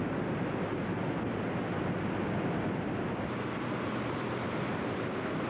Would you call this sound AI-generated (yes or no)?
no